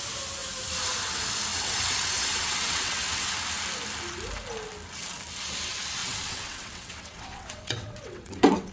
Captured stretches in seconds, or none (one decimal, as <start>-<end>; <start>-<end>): 0.0-1.5; 3.3-6.0